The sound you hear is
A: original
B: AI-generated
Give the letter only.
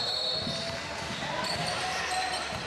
A